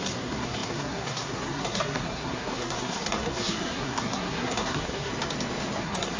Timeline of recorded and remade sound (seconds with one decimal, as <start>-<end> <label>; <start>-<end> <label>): 0.0-5.1 remade; 5.1-5.8 recorded; 5.8-6.2 remade